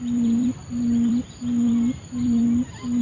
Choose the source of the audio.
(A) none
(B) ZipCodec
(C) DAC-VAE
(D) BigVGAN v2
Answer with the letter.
D